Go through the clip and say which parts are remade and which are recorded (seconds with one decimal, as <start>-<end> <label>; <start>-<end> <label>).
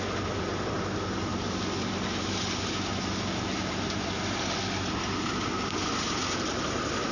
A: 0.0-7.1 recorded